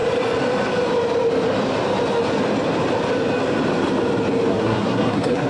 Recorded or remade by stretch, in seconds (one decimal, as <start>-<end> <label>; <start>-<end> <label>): 0.0-4.5 recorded; 4.5-5.5 remade